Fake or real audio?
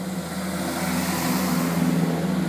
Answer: real